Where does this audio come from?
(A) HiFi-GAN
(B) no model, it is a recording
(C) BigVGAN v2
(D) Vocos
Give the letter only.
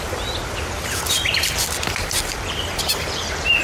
C